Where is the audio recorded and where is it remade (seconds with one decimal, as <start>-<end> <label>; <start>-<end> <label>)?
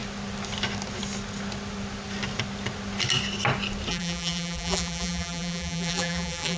0.0-3.9 recorded; 3.9-6.6 remade